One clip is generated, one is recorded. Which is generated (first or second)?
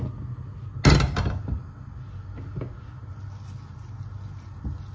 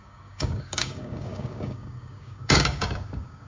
second